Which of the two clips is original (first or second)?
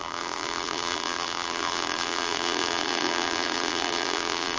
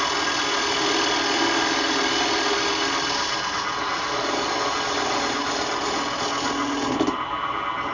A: second